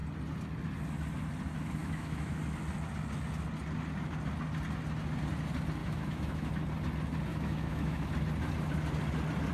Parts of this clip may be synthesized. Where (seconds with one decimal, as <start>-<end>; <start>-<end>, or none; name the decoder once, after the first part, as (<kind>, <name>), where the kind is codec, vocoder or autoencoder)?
1.8-2.4 (autoencoder, DAC-VAE); 5.8-6.5; 7.3-8.1